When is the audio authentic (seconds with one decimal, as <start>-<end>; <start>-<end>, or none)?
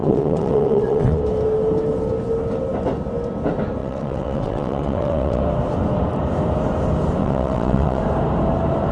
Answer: 1.2-3.8; 5.4-7.2; 8.0-8.9